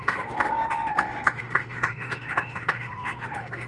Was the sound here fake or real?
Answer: fake